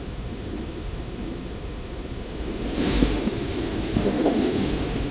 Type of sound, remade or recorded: remade